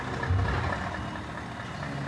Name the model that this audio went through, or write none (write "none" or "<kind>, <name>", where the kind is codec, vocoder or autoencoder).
none